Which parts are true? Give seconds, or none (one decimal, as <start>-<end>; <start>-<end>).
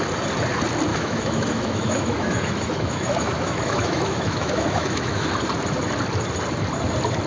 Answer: 0.0-0.9; 5.3-7.3